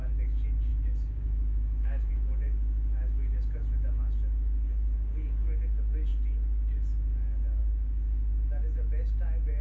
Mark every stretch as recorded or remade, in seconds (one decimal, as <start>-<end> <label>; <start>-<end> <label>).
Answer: 0.0-0.7 recorded; 0.7-2.1 remade; 2.1-9.6 recorded

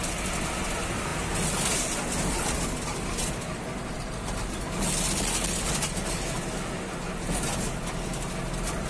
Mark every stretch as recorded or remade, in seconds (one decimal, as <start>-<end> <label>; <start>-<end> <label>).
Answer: 0.0-8.9 recorded

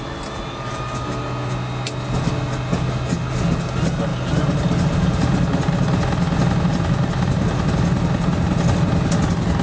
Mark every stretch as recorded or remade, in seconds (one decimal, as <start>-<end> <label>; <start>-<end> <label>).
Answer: 0.0-9.6 recorded